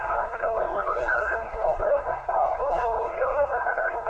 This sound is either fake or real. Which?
fake